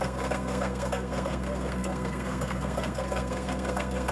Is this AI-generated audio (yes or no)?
yes